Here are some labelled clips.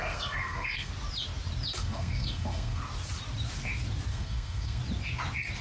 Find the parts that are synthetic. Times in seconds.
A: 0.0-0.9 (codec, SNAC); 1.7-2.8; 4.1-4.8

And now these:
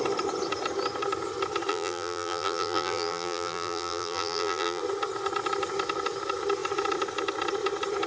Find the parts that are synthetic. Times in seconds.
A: 1.7-4.8 (vocoder, BigVGAN v2)

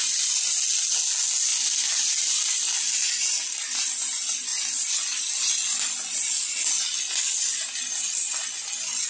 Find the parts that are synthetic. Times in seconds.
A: none

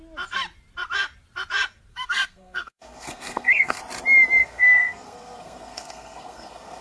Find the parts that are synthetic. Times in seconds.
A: 1.9-3.8 (codec, SNAC); 4.4-6.8

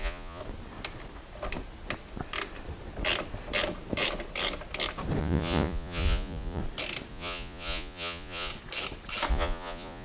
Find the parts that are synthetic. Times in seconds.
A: 0.0-0.4 (vocoder, Vocos); 5.2-6.6; 7.1-8.5; 9.3-10.0

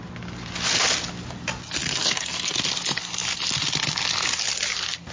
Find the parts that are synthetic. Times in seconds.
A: 1.8-2.6 (codec, SNAC)

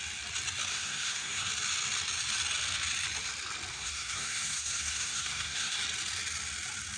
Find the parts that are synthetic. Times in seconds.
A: 0.7-1.5 (codec, SNAC); 3.7-5.8